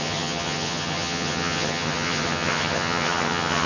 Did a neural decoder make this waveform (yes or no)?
yes